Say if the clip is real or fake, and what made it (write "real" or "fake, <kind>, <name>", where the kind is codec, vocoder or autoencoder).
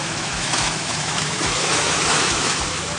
fake, autoencoder, DAC-VAE